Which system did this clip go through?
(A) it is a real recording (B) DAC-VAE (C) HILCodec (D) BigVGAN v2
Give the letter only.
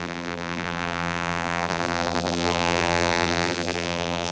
D